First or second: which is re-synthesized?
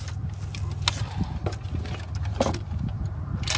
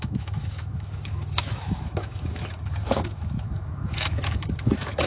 second